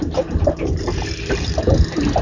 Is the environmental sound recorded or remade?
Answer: recorded